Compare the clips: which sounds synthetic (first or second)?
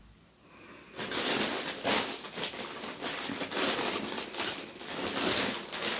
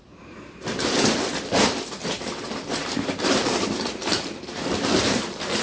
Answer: second